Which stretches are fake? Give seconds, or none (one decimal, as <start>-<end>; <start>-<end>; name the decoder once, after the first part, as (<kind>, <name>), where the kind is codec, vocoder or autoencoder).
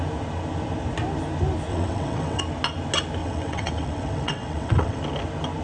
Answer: 1.7-2.4 (vocoder, WaveNeXt); 3.2-5.0